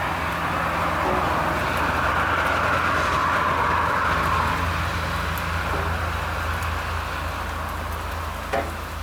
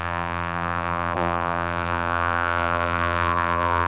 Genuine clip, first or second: first